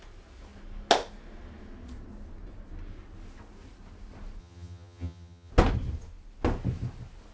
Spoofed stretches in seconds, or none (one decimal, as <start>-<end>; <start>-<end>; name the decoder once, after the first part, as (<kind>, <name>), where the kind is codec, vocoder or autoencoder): 4.4-5.5 (vocoder, HiFi-GAN)